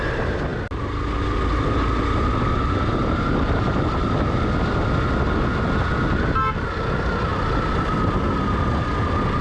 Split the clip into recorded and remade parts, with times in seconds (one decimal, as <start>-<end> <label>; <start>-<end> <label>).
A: 0.0-9.4 recorded